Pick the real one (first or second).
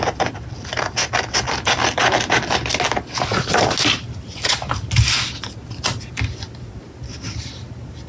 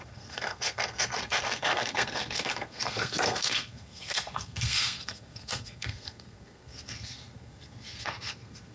first